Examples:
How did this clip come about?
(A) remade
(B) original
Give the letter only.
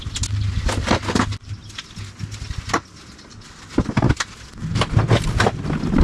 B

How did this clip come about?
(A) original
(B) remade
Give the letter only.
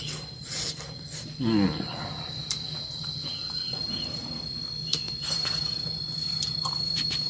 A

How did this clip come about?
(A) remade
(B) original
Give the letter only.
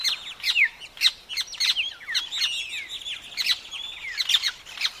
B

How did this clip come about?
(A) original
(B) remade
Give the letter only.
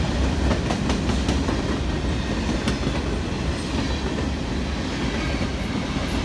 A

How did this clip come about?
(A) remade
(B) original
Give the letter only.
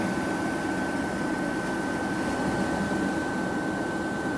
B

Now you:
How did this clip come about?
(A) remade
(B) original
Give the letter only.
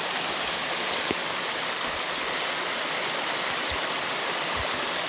B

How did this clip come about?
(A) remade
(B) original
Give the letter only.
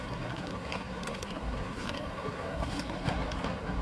A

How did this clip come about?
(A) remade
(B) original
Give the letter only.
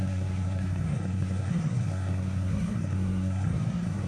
A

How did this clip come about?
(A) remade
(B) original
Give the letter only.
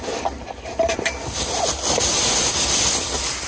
B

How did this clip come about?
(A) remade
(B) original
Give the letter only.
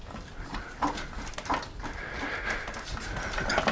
B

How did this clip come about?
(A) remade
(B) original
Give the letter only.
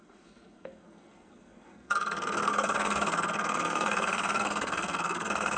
A